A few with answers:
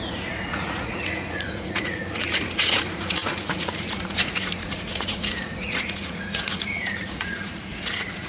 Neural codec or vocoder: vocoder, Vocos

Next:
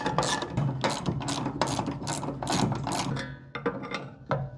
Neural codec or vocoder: none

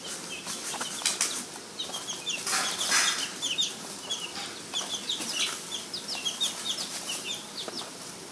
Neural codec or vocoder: none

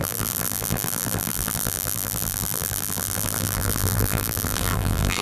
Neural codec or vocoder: vocoder, BigVGAN v2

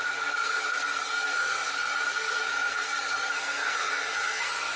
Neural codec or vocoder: codec, SNAC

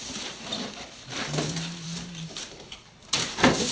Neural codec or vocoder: vocoder, BigVGAN v2